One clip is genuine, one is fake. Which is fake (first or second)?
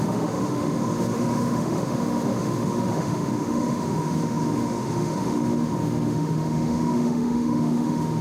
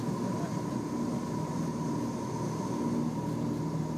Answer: first